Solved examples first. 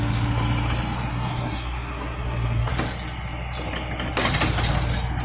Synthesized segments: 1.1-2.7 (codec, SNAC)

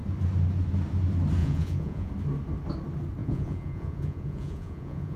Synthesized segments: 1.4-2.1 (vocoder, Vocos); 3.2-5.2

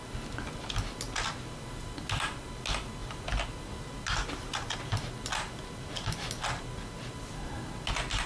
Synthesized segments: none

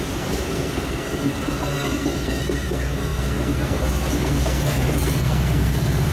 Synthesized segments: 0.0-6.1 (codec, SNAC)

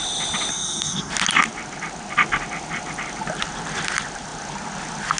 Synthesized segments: 0.5-1.1 (codec, SNAC)

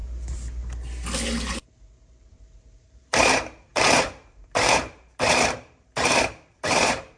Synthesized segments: 2.4-7.2 (vocoder, BigVGAN v2)